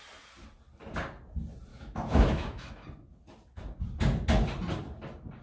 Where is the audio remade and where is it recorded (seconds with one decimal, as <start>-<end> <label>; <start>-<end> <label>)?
0.0-1.7 recorded; 1.7-2.7 remade; 2.7-5.4 recorded